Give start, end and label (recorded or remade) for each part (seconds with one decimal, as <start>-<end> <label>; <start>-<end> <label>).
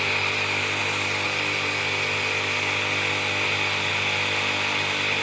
0.0-5.2 recorded